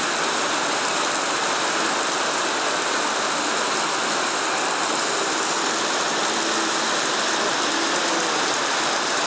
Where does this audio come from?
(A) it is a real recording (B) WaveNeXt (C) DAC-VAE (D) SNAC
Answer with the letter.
A